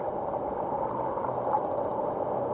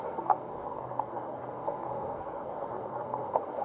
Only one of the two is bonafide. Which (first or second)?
first